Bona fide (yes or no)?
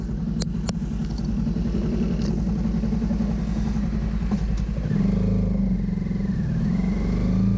yes